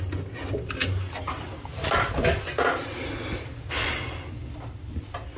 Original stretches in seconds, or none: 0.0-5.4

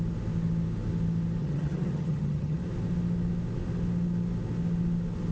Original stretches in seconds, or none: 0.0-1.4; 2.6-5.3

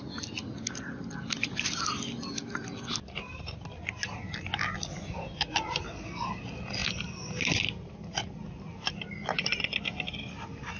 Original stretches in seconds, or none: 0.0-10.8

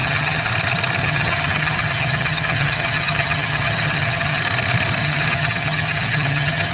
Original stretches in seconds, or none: 0.5-1.0; 4.4-5.0